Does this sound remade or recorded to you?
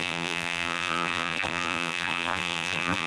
remade